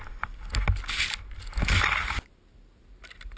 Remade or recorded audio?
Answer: recorded